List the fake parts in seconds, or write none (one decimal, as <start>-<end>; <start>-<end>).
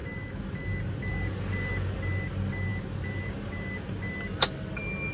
2.7-3.5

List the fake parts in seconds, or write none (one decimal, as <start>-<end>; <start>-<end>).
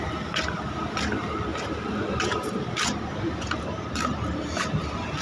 1.5-3.9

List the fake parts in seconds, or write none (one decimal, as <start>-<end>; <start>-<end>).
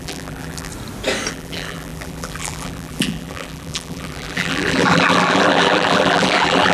0.0-0.7; 1.3-6.7